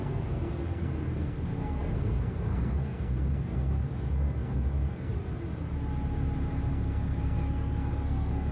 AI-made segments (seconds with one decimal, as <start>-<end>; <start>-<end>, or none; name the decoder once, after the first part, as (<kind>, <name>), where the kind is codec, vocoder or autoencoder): 0.0-5.1 (codec, SNAC); 6.7-8.5